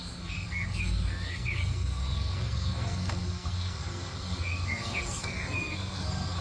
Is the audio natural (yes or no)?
no